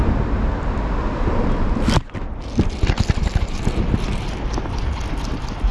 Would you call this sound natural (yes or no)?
yes